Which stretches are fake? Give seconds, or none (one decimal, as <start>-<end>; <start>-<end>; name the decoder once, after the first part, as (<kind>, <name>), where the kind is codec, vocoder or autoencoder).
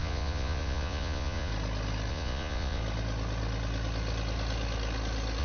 0.0-1.5 (vocoder, Vocos); 2.1-2.8